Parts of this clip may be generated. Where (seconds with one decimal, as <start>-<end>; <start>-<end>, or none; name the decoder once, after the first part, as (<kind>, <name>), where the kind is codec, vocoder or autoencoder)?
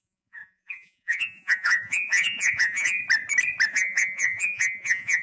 0.0-3.0 (vocoder, Vocos); 3.7-5.2